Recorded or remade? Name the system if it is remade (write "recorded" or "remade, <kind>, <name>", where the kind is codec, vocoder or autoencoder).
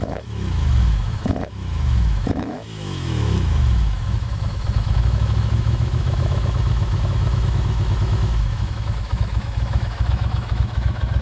remade, autoencoder, DAC-VAE